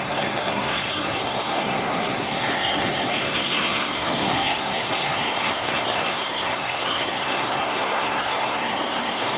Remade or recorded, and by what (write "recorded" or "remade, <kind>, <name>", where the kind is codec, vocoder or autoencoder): remade, codec, SNAC